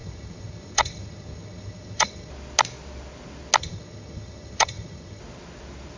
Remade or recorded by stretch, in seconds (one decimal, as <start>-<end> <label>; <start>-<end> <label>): 0.0-2.3 remade; 2.3-3.6 recorded; 3.6-5.2 remade; 5.2-6.0 recorded